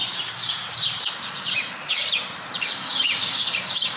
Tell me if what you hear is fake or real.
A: fake